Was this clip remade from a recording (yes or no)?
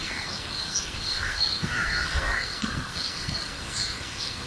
yes